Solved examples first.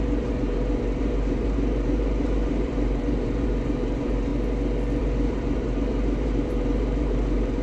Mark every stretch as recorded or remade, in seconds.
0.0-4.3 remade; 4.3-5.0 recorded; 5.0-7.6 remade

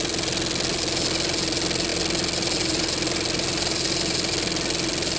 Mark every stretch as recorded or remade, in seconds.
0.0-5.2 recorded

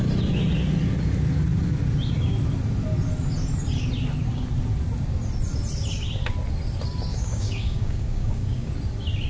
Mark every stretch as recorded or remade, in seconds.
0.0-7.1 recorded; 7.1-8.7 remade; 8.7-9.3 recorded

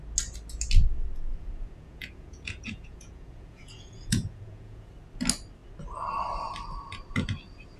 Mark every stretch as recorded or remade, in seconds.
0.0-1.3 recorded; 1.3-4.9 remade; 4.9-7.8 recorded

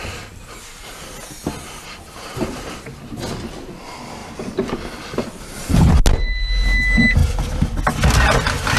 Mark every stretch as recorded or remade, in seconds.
0.0-8.8 recorded

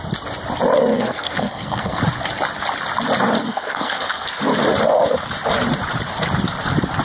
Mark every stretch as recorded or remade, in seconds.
0.0-0.9 recorded; 0.9-2.0 remade; 2.0-3.4 recorded; 3.4-4.4 remade; 4.4-7.0 recorded